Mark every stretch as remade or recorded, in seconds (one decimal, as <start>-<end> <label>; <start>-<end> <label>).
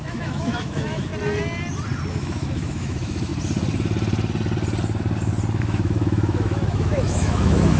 0.0-1.1 remade; 1.1-2.1 recorded; 2.1-3.3 remade; 3.3-5.6 recorded; 5.6-7.8 remade